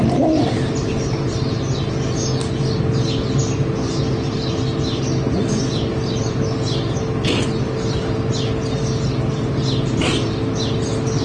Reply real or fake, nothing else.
real